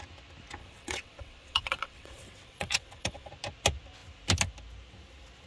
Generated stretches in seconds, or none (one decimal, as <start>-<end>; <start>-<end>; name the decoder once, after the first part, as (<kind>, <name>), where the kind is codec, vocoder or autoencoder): 0.6-3.3 (vocoder, WaveNeXt)